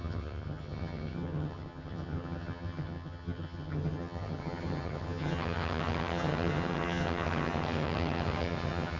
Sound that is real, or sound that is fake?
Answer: fake